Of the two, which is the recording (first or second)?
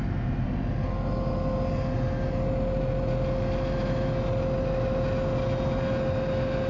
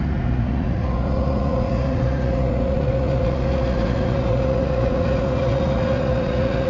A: first